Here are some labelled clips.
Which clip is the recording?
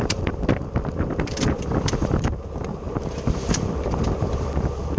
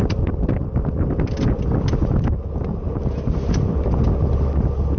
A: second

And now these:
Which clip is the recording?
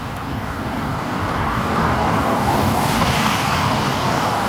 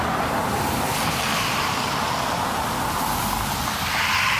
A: second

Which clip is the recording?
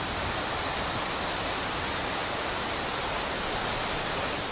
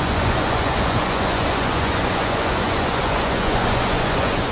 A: first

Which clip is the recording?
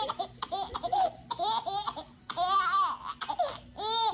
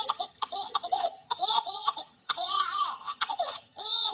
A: first